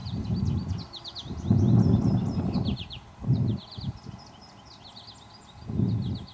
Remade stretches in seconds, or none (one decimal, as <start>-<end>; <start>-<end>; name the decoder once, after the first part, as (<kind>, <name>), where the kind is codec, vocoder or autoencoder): none